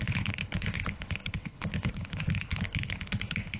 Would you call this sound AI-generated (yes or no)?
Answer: yes